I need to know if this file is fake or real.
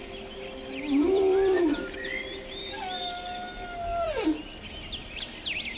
fake